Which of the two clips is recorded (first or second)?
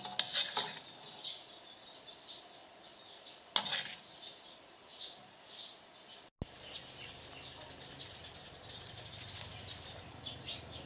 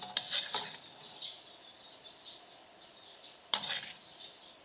first